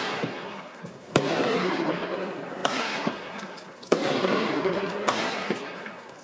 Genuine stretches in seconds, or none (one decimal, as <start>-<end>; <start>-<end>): none